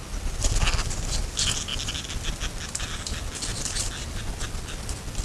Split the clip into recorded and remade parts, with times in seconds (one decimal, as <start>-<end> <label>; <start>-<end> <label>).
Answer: 0.0-5.2 recorded